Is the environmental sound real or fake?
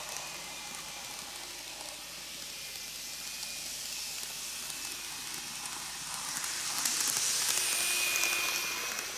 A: real